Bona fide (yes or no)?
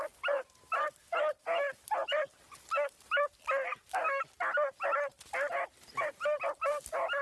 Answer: yes